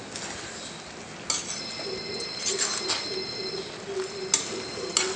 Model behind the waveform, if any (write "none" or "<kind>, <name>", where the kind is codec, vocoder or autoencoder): none